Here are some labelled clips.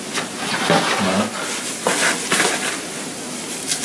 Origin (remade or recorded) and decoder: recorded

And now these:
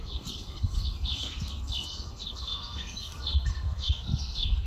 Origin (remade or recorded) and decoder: remade, codec, SNAC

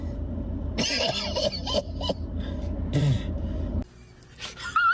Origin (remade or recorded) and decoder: recorded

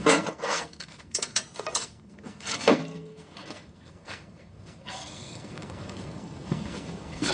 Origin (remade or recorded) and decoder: remade, codec, SNAC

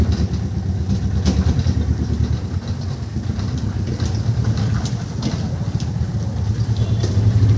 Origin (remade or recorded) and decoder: recorded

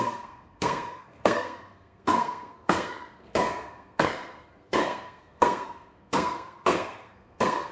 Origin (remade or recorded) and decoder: remade, codec, SNAC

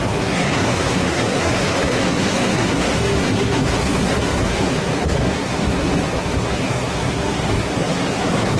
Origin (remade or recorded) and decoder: remade, codec, SNAC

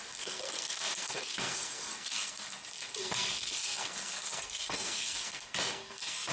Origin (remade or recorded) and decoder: remade, codec, SNAC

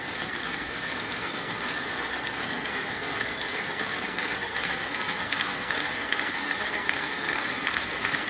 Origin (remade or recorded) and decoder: remade, codec, SNAC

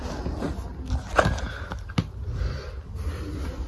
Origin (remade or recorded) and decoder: recorded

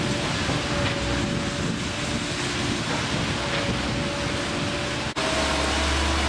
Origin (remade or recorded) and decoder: recorded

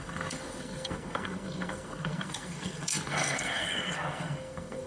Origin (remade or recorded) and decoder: remade, codec, SNAC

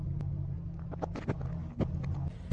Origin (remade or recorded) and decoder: recorded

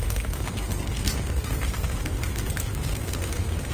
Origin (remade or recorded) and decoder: remade, codec, SNAC